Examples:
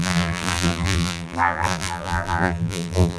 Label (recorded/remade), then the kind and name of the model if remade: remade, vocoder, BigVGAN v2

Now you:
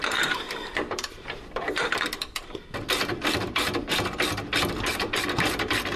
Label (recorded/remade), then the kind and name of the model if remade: remade, vocoder, BigVGAN v2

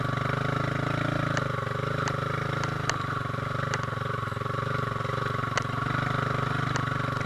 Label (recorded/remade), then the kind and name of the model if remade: recorded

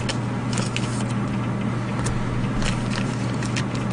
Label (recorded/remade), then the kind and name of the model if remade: recorded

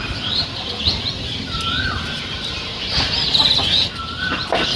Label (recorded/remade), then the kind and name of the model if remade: recorded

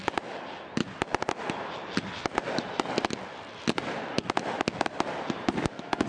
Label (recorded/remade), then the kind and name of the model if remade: recorded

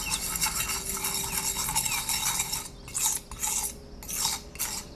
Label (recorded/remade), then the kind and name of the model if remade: recorded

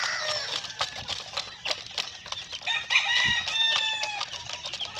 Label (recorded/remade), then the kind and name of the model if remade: recorded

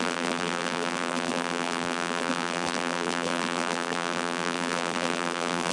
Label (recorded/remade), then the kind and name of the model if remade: remade, vocoder, BigVGAN v2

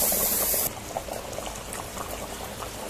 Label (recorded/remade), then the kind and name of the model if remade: recorded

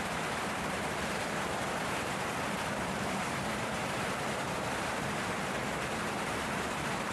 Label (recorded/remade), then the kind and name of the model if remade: remade, vocoder, BigVGAN v2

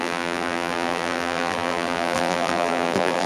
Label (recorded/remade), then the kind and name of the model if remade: remade, vocoder, BigVGAN v2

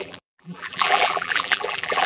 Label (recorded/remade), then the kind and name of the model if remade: remade, vocoder, BigVGAN v2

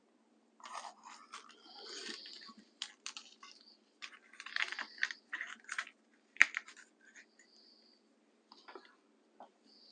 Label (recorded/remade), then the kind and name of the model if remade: remade, vocoder, BigVGAN v2